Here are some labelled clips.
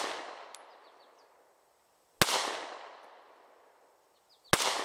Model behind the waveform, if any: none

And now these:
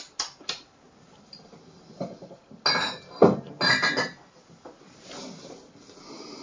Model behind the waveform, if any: none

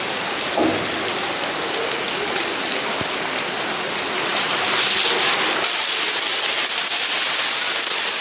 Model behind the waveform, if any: none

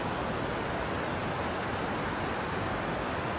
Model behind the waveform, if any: none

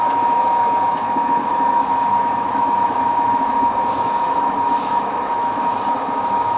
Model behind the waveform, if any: autoencoder, DAC-VAE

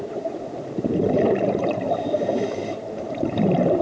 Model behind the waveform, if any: vocoder, BigVGAN v2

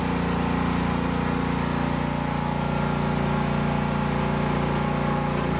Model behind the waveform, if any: none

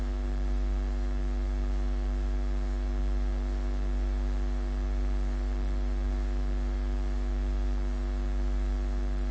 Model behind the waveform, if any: none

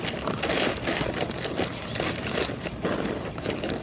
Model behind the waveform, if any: none